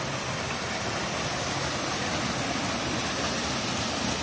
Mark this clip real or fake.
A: real